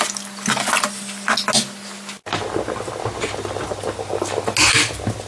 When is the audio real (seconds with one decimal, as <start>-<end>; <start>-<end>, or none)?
0.0-5.3

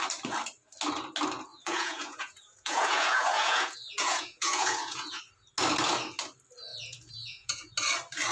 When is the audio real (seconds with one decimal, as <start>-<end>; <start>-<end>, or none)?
0.0-1.5; 5.2-6.7; 7.7-8.3

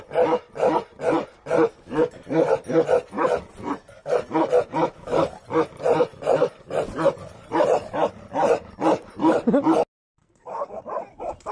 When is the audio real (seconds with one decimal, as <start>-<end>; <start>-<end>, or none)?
0.0-10.2; 10.8-11.5

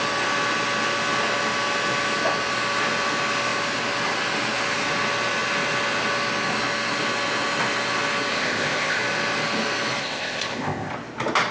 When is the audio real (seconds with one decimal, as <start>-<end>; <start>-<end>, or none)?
0.0-8.3; 9.0-10.0; 10.9-11.5